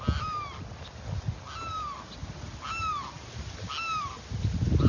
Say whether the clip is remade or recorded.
recorded